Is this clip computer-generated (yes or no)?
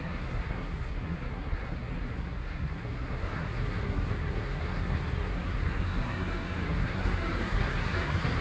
yes